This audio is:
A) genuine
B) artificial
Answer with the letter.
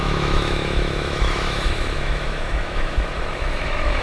B